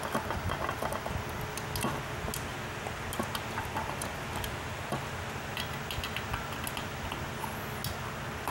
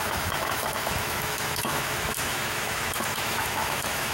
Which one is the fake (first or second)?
second